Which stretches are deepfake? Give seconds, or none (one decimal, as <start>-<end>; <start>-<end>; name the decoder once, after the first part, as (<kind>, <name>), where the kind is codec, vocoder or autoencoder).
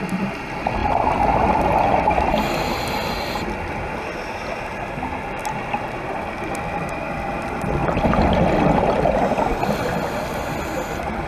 none